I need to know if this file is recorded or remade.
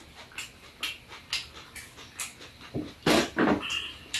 recorded